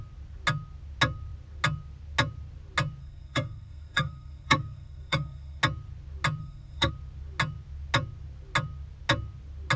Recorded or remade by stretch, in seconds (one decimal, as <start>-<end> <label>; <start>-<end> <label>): 0.0-3.0 recorded; 3.0-5.6 remade; 5.6-6.4 recorded; 6.4-6.9 remade; 6.9-9.8 recorded